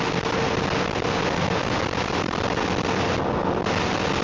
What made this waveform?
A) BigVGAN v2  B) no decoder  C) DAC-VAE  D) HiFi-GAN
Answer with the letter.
B